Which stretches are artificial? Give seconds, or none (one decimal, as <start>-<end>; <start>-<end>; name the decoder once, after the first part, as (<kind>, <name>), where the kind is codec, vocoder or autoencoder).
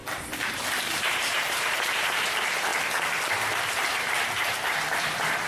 0.5-2.7 (vocoder, BigVGAN v2); 3.6-5.5